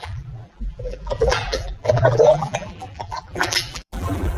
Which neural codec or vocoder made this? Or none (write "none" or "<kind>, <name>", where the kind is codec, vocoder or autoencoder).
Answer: vocoder, BigVGAN v2